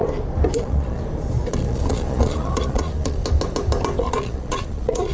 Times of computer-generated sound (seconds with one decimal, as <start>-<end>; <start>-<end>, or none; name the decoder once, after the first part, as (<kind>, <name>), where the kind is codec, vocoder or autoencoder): 0.6-1.0 (vocoder, Vocos); 1.5-3.2; 4.0-5.1